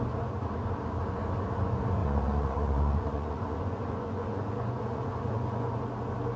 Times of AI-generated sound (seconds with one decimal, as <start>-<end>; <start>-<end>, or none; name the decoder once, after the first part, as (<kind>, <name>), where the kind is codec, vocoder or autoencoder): 2.0-5.8 (vocoder, Vocos)